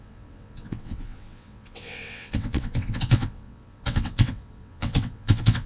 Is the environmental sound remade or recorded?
remade